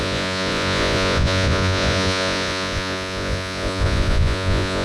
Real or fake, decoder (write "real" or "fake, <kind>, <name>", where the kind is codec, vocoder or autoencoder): fake, vocoder, Vocos